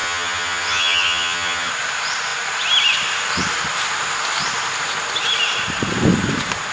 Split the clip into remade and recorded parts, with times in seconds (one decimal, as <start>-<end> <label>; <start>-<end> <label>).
0.0-1.7 remade; 1.7-6.7 recorded

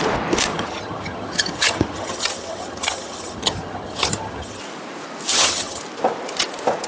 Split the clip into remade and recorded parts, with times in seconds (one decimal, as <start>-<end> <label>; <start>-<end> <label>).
0.0-0.5 recorded; 0.5-4.6 remade; 4.6-5.3 recorded; 5.3-5.8 remade; 5.8-6.9 recorded

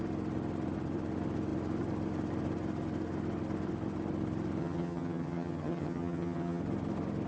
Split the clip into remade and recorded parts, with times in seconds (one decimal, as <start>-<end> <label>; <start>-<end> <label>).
0.0-4.6 recorded; 4.6-6.6 remade; 6.6-7.3 recorded

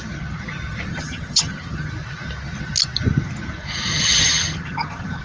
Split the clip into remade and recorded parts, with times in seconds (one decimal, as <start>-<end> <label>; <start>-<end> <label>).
0.0-0.9 recorded; 0.9-1.9 remade; 1.9-3.9 recorded; 3.9-5.2 remade